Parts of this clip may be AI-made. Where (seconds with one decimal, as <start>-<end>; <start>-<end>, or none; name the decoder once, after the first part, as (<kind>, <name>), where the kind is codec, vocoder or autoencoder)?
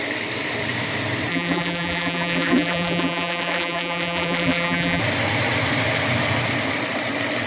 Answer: 1.3-5.0 (vocoder, BigVGAN v2)